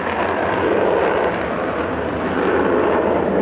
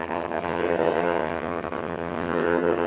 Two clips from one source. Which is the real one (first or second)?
first